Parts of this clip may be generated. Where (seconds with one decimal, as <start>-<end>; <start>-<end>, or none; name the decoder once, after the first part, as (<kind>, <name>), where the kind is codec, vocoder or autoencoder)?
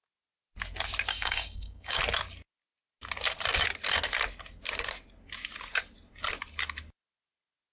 1.1-2.0 (codec, DAC)